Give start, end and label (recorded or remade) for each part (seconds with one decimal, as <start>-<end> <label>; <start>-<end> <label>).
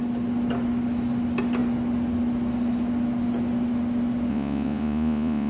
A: 0.0-4.3 recorded; 4.3-5.5 remade